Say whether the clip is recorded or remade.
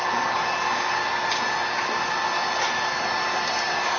recorded